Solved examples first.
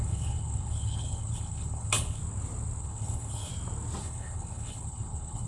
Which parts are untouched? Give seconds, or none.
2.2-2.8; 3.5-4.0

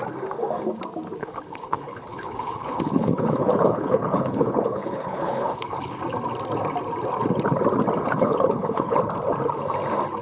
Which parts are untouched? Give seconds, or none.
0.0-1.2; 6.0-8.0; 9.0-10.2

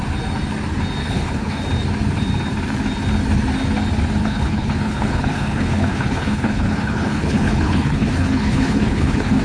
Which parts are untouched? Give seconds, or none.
0.0-1.0; 1.6-4.2

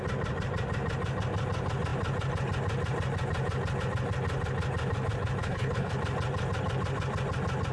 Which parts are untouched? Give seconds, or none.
0.0-5.4; 5.9-7.7

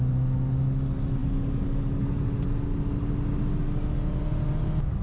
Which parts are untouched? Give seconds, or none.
0.0-5.0